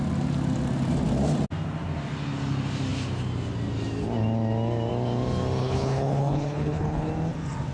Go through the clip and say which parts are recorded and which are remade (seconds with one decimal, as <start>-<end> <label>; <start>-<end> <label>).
0.0-5.6 recorded; 5.6-7.1 remade; 7.1-7.7 recorded